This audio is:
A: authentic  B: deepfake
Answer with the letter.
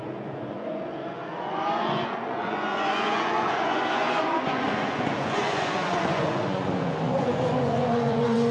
B